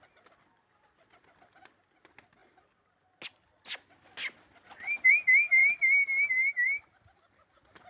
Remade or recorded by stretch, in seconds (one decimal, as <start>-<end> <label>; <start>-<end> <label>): 0.0-7.9 recorded